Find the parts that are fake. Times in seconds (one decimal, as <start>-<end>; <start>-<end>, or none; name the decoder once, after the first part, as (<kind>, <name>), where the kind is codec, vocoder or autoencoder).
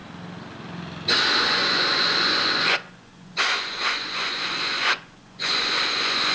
1.4-6.3 (vocoder, Vocos)